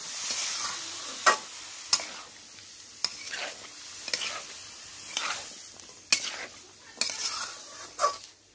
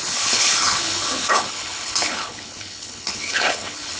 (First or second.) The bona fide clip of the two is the first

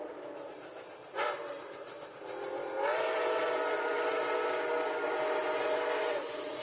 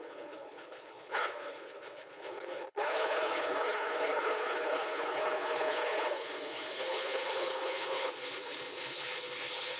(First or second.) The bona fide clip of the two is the first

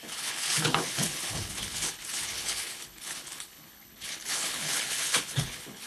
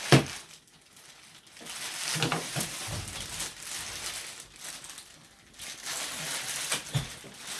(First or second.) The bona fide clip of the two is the second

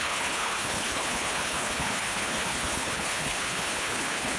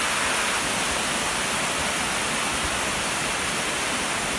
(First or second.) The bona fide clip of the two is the second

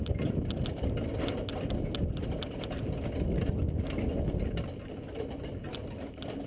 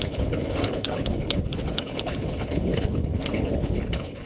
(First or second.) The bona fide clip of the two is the first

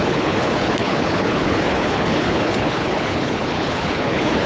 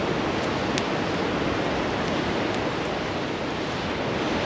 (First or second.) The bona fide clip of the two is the second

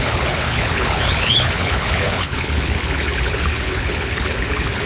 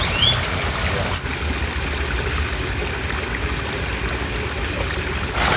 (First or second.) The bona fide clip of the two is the second